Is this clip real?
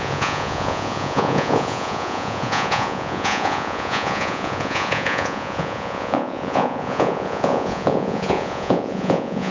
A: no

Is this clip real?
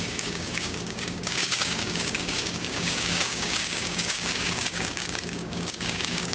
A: no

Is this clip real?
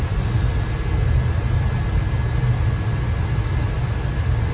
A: yes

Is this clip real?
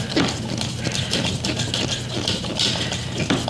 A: yes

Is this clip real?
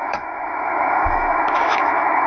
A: no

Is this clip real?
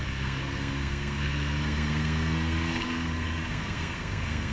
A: no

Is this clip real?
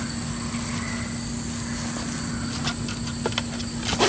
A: yes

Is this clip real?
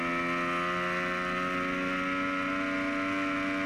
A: yes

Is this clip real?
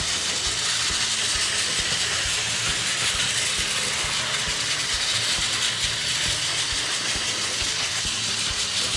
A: yes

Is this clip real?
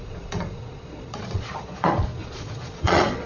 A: no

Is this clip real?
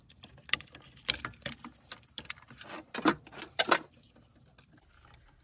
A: yes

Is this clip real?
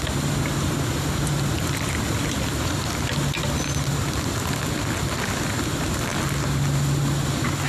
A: yes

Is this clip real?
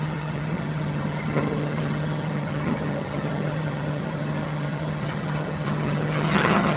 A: no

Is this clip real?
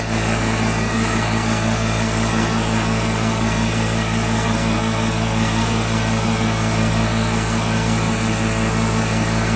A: no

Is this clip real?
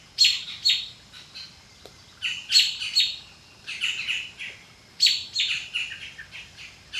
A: yes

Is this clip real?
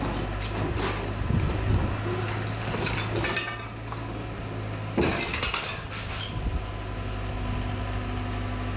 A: yes